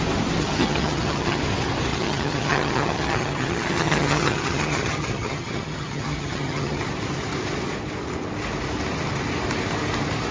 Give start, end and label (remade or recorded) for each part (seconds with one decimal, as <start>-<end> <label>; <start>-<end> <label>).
0.0-0.4 recorded; 0.4-1.4 remade; 1.4-1.9 recorded; 1.9-6.8 remade; 6.8-10.3 recorded